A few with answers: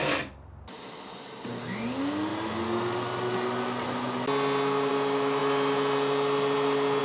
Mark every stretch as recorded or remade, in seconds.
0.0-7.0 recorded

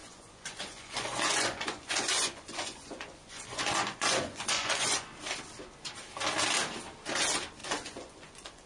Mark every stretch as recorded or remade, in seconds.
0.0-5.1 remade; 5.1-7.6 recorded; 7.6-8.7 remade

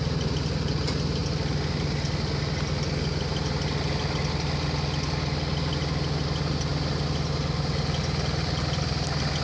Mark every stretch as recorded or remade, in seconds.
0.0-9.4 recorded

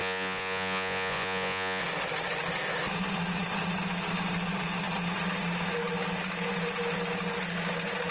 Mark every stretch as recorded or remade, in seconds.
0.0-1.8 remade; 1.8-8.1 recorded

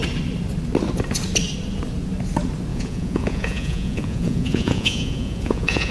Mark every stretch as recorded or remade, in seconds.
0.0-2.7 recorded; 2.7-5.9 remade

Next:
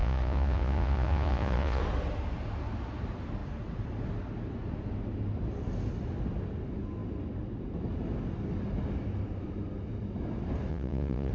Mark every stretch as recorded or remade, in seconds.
0.0-1.8 remade; 1.8-10.7 recorded; 10.7-11.3 remade